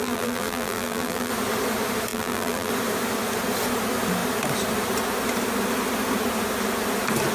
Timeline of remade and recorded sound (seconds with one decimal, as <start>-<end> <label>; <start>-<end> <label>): 0.0-1.3 remade; 1.3-2.1 recorded; 2.1-2.7 remade; 2.7-7.3 recorded

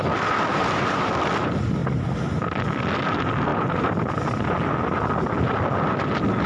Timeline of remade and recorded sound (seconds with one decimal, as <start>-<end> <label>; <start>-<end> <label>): 0.0-0.5 recorded; 0.5-1.1 remade; 1.1-1.8 recorded; 1.8-2.3 remade; 2.3-3.5 recorded; 3.5-4.1 remade; 4.1-6.5 recorded

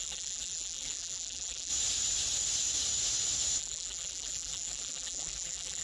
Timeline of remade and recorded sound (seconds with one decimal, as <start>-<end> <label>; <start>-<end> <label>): 0.0-1.7 remade; 1.7-3.6 recorded; 3.6-5.8 remade